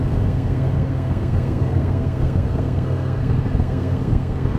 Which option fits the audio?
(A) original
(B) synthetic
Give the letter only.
B